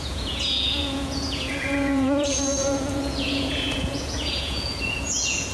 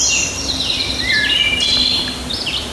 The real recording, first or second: second